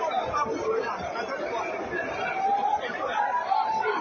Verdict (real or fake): fake